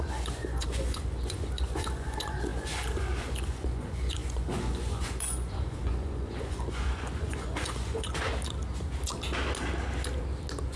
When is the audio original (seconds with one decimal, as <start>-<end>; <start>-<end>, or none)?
8.3-10.8